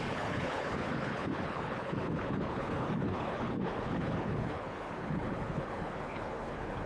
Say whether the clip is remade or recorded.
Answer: remade